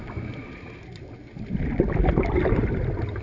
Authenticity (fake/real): real